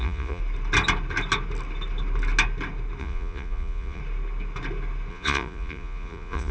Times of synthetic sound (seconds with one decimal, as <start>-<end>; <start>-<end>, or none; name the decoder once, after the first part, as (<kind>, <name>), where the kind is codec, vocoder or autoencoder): 0.0-0.4 (vocoder, Vocos); 3.0-4.0; 5.1-6.5